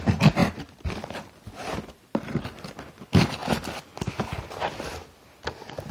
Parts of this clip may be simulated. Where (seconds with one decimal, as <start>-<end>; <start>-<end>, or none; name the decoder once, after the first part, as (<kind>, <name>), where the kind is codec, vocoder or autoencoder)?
0.4-2.7 (vocoder, BigVGAN v2)